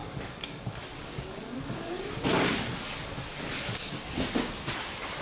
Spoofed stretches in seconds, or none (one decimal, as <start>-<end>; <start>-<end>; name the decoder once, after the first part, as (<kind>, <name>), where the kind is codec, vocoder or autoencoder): 0.0-2.1 (codec, DAC); 3.3-3.8

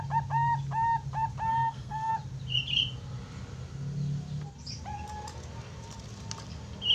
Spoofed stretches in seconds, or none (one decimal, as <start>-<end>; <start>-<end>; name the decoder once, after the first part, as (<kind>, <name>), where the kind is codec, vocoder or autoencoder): 1.5-2.1 (codec, SNAC)

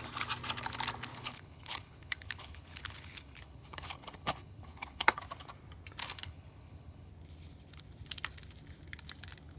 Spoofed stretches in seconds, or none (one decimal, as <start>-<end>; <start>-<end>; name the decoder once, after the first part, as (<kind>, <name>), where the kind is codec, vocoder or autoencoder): 1.1-5.2 (codec, HILCodec); 6.0-7.1

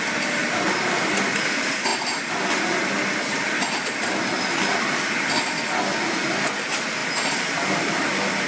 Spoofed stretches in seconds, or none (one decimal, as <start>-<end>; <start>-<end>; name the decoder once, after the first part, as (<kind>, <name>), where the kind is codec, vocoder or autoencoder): 0.4-1.0 (vocoder, BigVGAN v2); 7.0-8.0

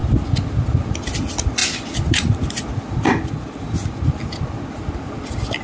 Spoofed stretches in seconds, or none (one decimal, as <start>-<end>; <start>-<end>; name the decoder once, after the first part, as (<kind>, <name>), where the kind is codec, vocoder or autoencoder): none

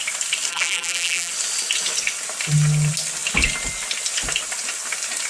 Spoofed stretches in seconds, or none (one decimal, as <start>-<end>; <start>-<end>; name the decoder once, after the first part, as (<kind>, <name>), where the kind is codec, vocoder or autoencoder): 0.5-1.3 (vocoder, BigVGAN v2)

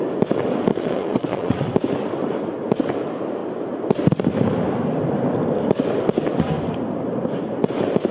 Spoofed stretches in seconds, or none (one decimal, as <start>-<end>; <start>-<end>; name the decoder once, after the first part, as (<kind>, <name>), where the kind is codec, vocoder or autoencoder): 0.7-1.7 (vocoder, Vocos)

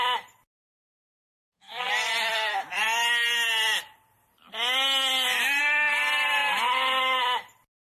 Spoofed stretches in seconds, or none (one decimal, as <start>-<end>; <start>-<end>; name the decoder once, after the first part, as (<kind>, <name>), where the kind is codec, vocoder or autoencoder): 1.3-1.9 (codec, SNAC)